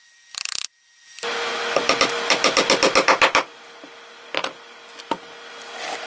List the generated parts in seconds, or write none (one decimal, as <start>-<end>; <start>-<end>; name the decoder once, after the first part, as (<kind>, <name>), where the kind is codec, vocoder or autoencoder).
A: none